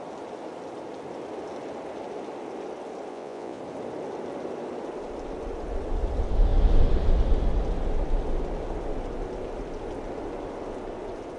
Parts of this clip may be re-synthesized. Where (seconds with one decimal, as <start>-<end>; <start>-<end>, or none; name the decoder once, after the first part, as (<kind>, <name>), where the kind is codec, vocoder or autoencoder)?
3.1-3.6 (vocoder, Vocos)